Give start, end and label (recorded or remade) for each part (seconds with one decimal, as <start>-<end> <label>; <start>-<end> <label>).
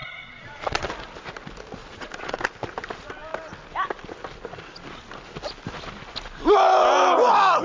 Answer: 0.0-0.9 remade; 0.9-1.8 recorded; 1.8-2.4 remade; 2.4-7.6 recorded